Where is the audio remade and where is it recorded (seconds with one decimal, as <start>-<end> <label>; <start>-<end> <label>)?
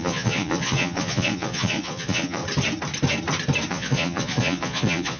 0.0-2.4 remade; 2.4-3.7 recorded; 3.7-5.2 remade